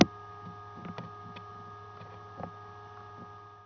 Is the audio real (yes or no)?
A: yes